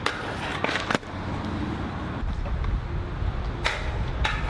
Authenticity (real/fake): real